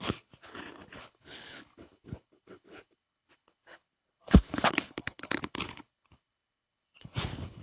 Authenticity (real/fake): fake